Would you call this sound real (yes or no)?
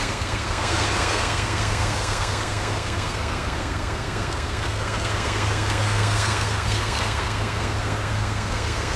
no